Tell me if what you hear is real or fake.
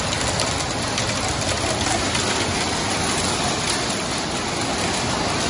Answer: real